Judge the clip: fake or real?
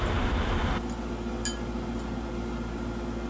real